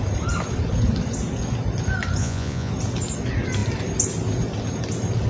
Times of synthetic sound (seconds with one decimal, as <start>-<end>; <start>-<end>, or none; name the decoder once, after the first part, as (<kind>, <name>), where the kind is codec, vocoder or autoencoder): 2.2-2.7 (vocoder, Vocos)